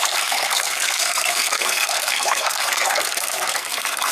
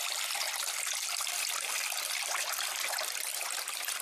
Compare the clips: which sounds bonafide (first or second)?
second